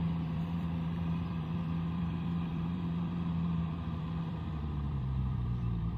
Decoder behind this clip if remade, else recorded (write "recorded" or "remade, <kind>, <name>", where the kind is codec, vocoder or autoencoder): remade, vocoder, BigVGAN v2